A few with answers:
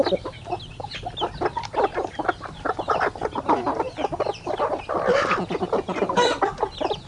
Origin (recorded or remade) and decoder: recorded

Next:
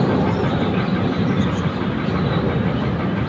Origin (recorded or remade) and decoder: recorded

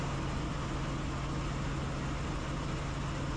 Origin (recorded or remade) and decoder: recorded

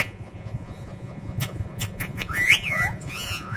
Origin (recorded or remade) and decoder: remade, vocoder, Vocos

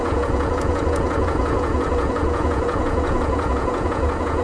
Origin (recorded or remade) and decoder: remade, vocoder, Vocos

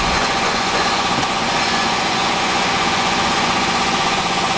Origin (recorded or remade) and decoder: remade, vocoder, Vocos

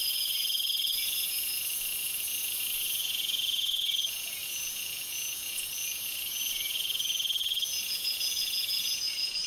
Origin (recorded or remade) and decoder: remade, vocoder, Vocos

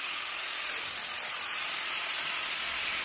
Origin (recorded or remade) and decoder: recorded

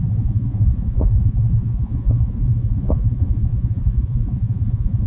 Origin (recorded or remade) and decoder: remade, vocoder, Vocos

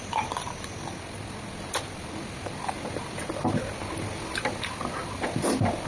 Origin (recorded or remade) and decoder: recorded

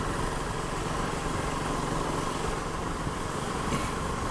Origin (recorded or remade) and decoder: recorded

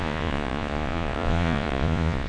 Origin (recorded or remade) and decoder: remade, vocoder, Vocos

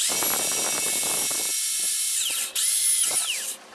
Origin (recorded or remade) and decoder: recorded